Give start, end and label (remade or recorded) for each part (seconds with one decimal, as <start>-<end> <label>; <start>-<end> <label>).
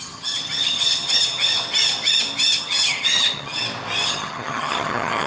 0.0-1.5 remade; 1.5-2.6 recorded; 2.6-3.6 remade; 3.6-4.1 recorded; 4.1-5.3 remade